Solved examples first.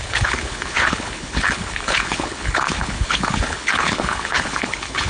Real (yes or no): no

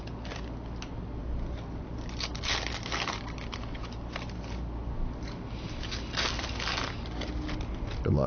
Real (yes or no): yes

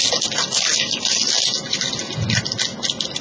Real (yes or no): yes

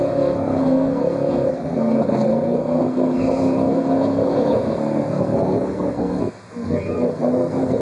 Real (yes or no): no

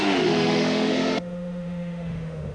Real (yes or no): no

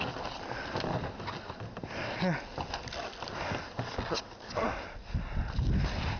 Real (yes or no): yes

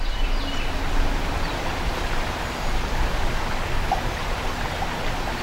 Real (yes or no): yes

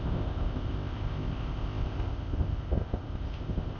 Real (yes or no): no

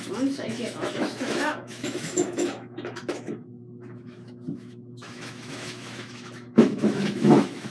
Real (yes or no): no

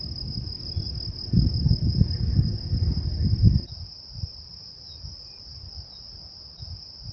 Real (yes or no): yes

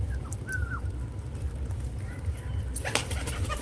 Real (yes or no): yes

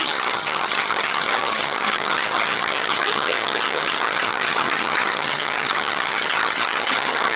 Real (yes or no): no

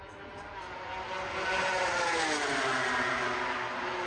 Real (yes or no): yes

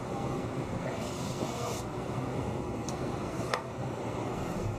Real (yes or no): no